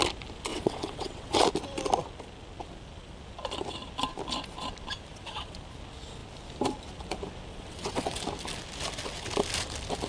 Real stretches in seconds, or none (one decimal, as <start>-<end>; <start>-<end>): 0.0-0.5; 1.4-5.1; 5.6-7.5; 8.2-10.1